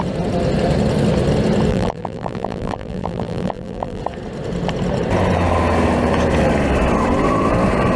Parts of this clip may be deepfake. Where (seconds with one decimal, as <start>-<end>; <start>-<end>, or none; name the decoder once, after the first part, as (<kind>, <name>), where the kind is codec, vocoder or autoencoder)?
1.7-4.0 (vocoder, BigVGAN v2)